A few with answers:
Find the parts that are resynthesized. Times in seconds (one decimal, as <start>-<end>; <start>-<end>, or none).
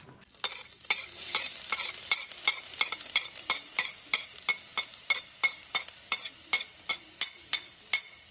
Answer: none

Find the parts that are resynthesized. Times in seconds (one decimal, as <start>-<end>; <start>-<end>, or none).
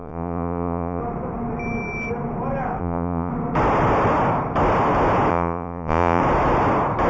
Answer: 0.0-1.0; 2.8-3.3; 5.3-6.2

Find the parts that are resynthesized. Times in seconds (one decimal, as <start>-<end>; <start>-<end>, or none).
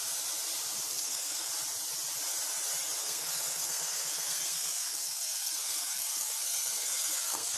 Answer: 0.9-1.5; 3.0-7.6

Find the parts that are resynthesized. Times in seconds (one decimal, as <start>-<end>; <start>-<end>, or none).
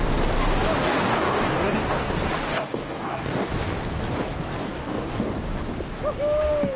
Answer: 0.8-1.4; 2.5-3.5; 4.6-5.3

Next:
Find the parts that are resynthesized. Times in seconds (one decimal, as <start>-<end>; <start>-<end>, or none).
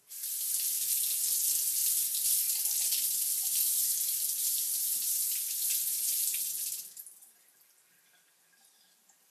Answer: none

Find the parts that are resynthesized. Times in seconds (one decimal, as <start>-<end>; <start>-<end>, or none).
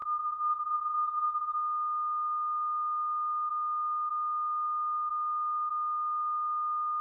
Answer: 0.0-1.6